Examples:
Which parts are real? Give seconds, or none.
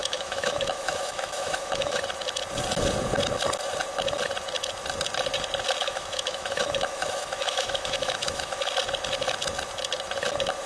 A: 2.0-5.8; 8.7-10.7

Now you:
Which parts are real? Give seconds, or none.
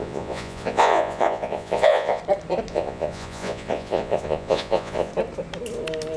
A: 2.2-2.7; 5.1-6.2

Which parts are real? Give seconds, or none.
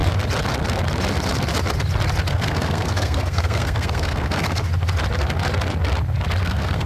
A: 0.0-2.3; 4.7-6.4